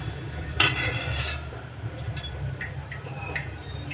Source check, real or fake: fake